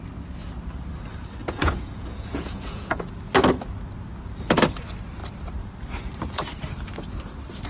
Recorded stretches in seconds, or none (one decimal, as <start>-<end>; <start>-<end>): 0.0-1.4; 3.1-7.7

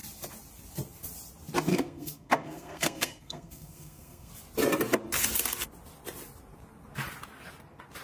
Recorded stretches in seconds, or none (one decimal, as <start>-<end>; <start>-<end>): 0.0-1.7; 4.3-8.0

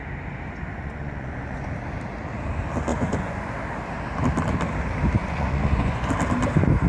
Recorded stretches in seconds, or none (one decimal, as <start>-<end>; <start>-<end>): 0.0-0.7; 1.7-2.9; 3.5-5.2; 6.1-6.9

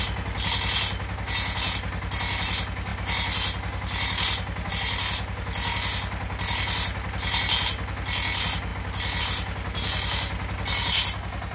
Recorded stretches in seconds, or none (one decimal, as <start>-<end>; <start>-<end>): 0.0-11.5

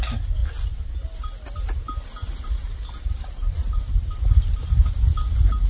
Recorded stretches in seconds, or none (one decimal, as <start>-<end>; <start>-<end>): 0.0-5.7

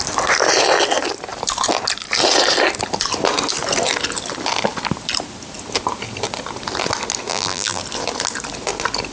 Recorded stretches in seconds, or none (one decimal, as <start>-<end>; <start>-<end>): 0.0-7.3; 7.8-9.1

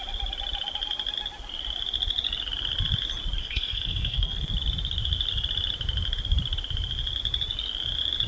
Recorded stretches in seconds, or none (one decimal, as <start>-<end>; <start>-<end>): 0.0-3.4; 4.5-8.3